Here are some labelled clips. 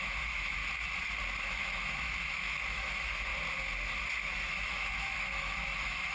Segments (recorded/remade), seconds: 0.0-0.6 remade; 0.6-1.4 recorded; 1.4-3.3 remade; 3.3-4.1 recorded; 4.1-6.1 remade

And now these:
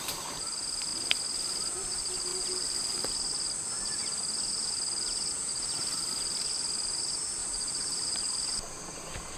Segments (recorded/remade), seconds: 0.0-2.3 recorded; 2.3-3.1 remade; 3.1-7.4 recorded; 7.4-8.2 remade; 8.2-9.4 recorded

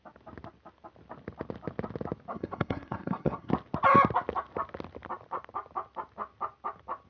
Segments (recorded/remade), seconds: 0.0-2.3 recorded; 2.3-3.5 remade; 3.5-7.1 recorded

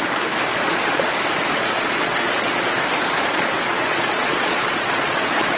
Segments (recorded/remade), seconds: 0.0-0.5 recorded; 0.5-1.1 remade; 1.1-1.6 recorded; 1.6-2.8 remade; 2.8-3.3 recorded; 3.3-5.6 remade

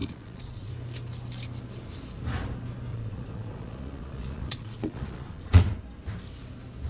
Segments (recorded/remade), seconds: 0.0-0.7 remade; 0.7-2.9 recorded; 2.9-5.6 remade; 5.6-6.9 recorded

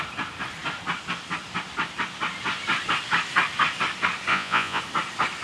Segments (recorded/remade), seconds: 0.0-4.3 recorded; 4.3-4.8 remade; 4.8-5.4 recorded